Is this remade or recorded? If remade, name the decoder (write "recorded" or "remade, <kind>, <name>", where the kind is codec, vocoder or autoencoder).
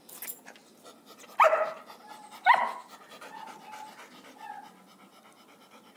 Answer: recorded